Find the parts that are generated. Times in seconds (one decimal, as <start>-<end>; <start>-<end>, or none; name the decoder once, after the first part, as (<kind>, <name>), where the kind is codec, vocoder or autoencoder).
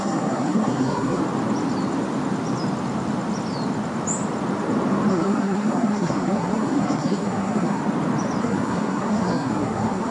0.0-1.2 (codec, SNAC); 5.1-7.8; 8.4-10.1